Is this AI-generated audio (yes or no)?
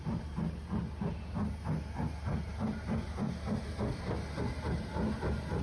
no